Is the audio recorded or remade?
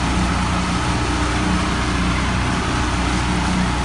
recorded